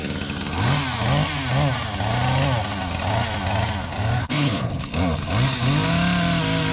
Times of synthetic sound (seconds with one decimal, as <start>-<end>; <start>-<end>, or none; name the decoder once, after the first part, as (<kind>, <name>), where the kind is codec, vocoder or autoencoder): 4.2-4.9 (codec, HILCodec)